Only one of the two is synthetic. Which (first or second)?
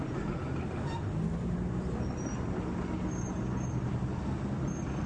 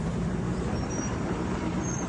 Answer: second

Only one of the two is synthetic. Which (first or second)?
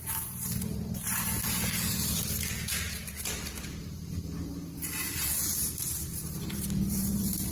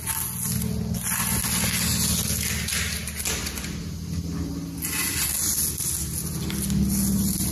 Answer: first